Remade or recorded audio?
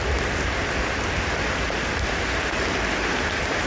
recorded